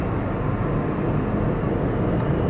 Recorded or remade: recorded